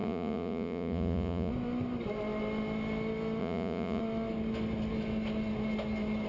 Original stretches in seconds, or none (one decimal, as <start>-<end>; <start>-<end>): 1.5-3.4; 4.0-6.3